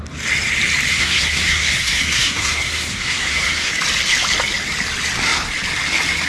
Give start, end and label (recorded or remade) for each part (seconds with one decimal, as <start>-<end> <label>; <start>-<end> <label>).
0.0-0.9 recorded; 0.9-3.7 remade; 3.7-6.3 recorded